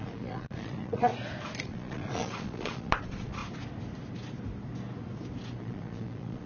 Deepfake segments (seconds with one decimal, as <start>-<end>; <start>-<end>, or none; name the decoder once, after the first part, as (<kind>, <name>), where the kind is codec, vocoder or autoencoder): 0.0-1.1 (vocoder, Vocos); 1.6-3.4; 5.6-6.5